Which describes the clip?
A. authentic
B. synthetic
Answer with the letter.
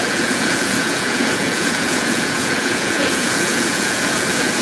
B